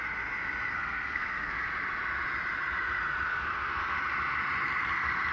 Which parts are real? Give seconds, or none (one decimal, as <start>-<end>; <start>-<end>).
0.0-0.7; 1.6-3.3; 4.0-5.3